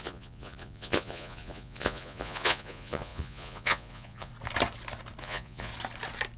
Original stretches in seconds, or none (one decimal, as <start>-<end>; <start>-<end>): 4.3-5.2; 5.7-6.4